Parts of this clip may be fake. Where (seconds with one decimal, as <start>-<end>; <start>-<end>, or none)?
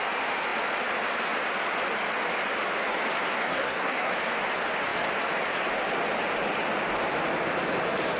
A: 3.3-4.1